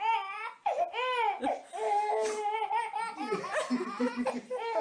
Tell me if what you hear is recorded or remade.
recorded